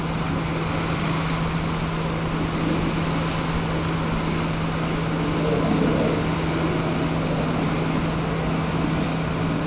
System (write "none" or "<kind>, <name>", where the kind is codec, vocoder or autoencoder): none